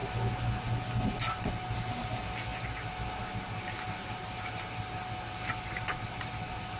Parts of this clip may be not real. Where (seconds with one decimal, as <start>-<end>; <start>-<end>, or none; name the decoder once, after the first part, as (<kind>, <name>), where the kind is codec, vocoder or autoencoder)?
none